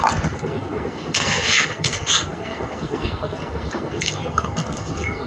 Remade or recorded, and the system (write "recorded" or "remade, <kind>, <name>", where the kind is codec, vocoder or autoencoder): remade, codec, SNAC